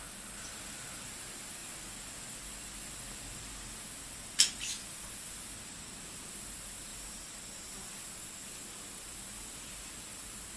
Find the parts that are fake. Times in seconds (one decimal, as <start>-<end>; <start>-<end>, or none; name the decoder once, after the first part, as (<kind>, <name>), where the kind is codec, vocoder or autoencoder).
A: 6.9-9.8 (vocoder, BigVGAN v2)